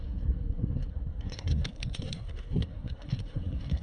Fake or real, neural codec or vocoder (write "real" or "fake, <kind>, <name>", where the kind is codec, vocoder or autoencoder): fake, codec, SNAC